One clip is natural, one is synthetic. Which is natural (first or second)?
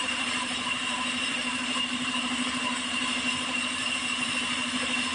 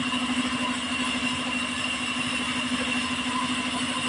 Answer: second